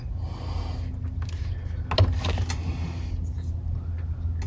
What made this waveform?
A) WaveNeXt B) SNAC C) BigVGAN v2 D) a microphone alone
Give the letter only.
D